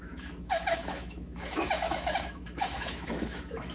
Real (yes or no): no